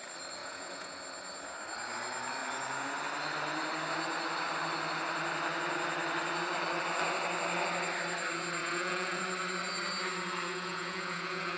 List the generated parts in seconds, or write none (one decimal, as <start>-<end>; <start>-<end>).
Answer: 0.4-1.0; 8.6-9.2; 10.5-11.6